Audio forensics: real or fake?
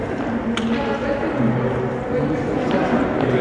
real